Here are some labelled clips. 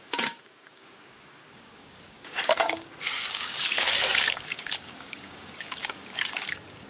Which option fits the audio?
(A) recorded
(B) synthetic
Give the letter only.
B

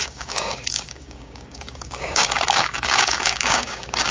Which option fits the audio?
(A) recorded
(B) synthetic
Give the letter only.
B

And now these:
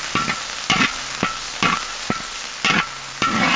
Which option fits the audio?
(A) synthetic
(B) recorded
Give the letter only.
B